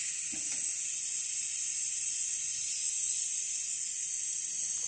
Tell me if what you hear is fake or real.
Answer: real